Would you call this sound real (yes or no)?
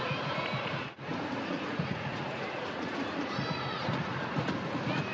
no